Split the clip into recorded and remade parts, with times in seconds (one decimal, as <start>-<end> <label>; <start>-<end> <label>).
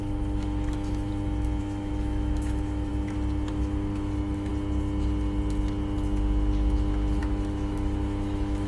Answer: 0.0-1.1 remade; 1.1-1.6 recorded; 1.6-2.9 remade; 2.9-3.5 recorded; 3.5-4.5 remade; 4.5-7.2 recorded; 7.2-8.7 remade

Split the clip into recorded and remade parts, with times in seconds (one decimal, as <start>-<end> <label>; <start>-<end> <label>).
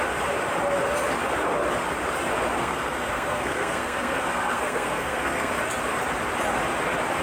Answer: 0.0-2.6 recorded; 2.6-5.5 remade; 5.5-7.2 recorded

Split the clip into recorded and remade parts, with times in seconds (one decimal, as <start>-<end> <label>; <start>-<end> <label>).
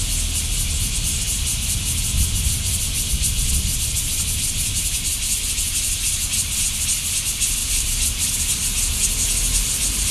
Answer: 0.0-7.6 recorded; 7.6-8.3 remade; 8.3-10.1 recorded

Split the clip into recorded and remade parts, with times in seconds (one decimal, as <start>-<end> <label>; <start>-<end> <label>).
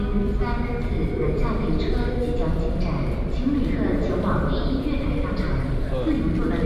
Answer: 0.0-6.7 recorded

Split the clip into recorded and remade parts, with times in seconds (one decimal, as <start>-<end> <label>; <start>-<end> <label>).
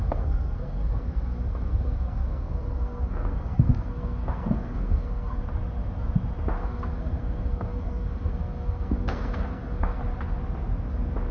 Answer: 0.0-5.4 remade; 5.4-6.6 recorded; 6.6-10.0 remade; 10.0-11.3 recorded